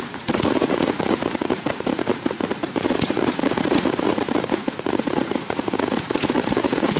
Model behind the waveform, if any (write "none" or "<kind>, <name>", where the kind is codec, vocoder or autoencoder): vocoder, Vocos